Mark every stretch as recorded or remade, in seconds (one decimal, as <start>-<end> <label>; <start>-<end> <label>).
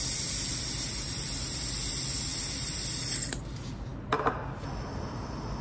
0.0-5.6 recorded